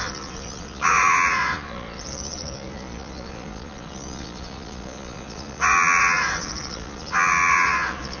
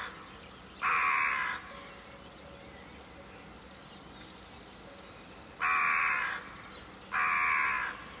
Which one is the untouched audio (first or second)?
second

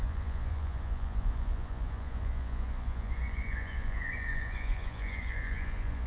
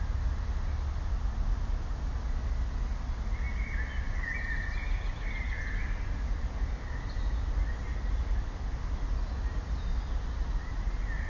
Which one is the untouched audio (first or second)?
second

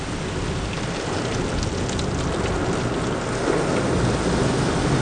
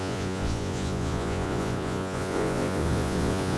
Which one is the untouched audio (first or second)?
first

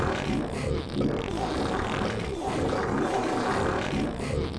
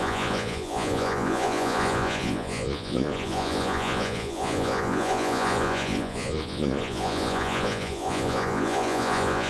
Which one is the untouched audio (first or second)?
first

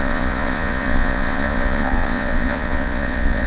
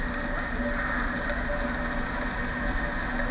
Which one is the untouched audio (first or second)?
second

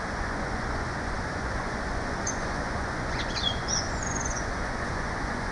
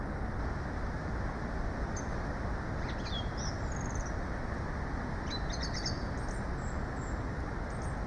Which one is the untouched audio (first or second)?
second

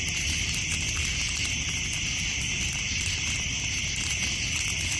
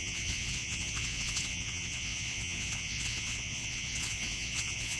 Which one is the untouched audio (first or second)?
first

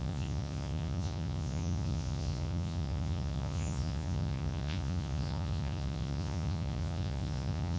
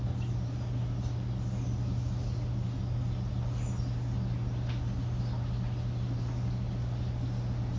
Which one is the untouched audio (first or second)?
second